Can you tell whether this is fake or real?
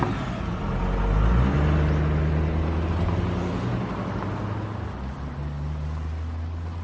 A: real